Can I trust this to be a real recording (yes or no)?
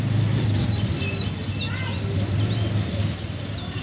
yes